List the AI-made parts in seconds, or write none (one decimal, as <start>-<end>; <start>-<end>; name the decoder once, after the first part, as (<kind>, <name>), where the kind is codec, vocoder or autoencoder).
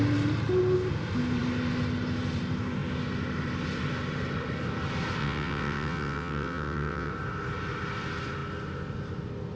5.2-7.1 (vocoder, WaveNeXt)